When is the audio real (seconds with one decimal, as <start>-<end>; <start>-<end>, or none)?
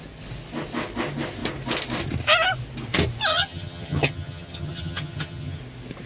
0.0-3.3; 5.6-6.1